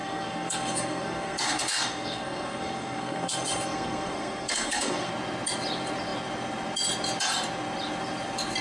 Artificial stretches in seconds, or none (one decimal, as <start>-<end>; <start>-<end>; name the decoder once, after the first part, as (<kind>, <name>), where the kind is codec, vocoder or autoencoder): 0.0-5.1 (codec, SNAC)

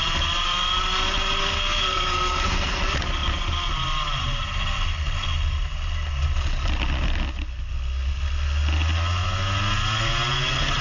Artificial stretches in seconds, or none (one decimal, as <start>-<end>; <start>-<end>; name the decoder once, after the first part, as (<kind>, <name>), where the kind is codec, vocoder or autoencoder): 1.4-2.8 (codec, SNAC)